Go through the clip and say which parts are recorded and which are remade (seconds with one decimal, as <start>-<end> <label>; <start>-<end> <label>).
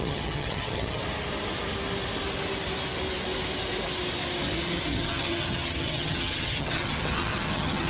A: 0.0-1.0 remade; 1.0-4.9 recorded; 4.9-7.9 remade